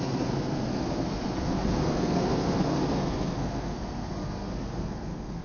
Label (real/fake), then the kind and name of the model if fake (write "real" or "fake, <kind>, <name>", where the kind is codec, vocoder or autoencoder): fake, codec, SNAC